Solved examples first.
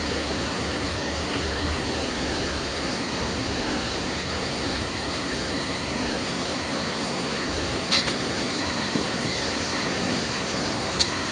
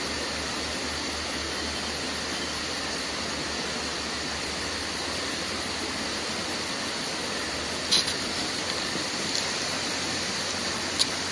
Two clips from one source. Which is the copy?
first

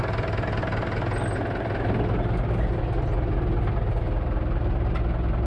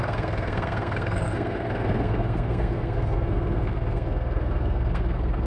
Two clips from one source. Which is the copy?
second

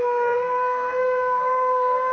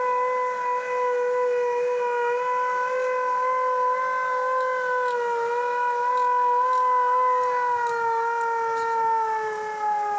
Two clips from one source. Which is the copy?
first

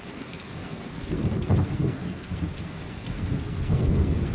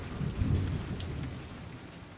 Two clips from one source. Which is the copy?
first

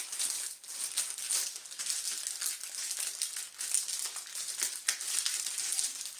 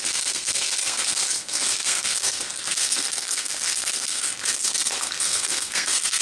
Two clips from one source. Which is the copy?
second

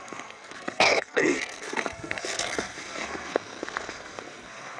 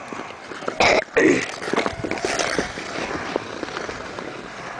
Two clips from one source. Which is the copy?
first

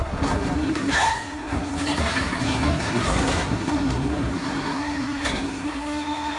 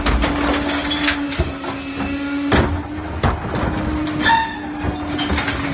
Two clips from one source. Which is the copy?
first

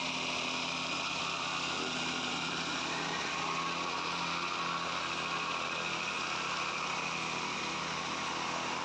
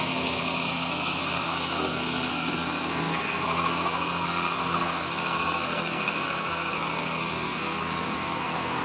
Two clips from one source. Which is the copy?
second